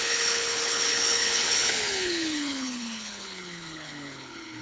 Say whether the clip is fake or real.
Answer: fake